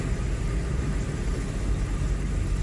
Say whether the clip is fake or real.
real